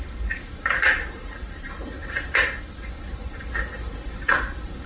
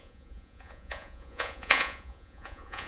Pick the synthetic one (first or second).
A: second